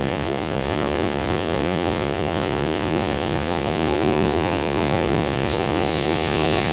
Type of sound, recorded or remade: remade